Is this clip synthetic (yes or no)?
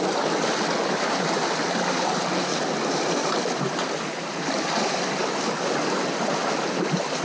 no